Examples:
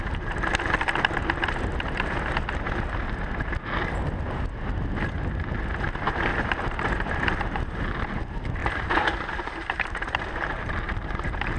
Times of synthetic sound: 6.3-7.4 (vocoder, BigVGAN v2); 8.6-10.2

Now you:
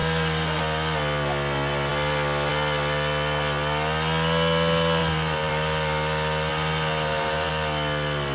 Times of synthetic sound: 0.0-0.6 (vocoder, BigVGAN v2); 5.0-5.5; 6.5-7.5